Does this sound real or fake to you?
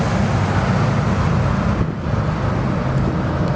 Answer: real